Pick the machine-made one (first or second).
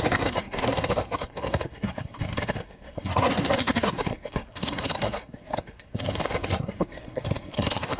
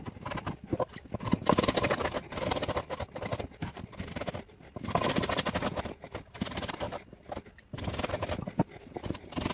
first